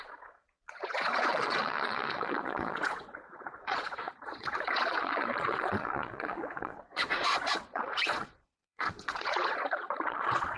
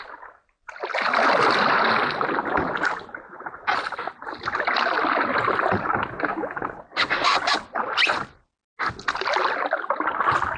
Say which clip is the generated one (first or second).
first